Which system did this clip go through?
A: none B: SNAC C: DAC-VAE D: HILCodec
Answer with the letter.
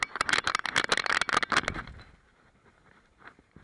A